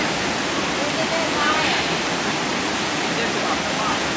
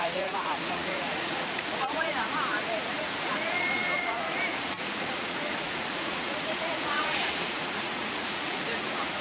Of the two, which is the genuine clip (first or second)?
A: first